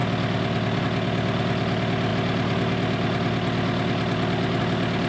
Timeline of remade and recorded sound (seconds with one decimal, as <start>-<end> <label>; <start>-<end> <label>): 0.0-5.1 recorded